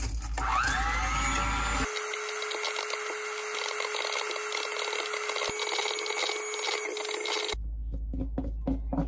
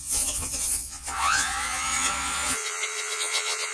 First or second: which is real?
first